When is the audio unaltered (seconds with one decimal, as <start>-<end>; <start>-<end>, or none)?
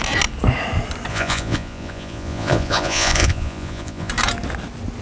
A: 0.0-1.1; 4.1-5.0